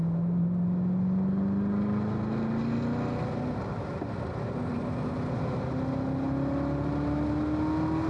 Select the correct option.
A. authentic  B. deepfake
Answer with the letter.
A